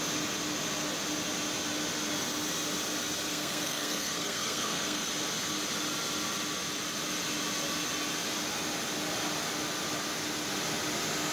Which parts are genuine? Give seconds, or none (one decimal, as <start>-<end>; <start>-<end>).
0.0-3.3; 5.1-11.3